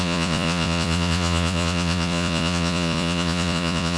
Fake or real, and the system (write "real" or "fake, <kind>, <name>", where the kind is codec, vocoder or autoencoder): fake, vocoder, Vocos